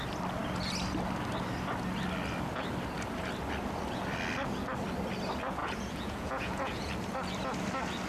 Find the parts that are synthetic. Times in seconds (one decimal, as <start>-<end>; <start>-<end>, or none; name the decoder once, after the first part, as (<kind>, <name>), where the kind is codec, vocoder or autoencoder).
5.6-6.9 (vocoder, Vocos)